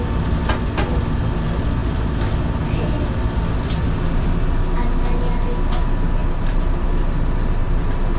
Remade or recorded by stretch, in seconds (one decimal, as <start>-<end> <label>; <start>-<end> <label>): 0.0-6.2 recorded; 6.2-6.9 remade; 6.9-7.6 recorded; 7.6-8.2 remade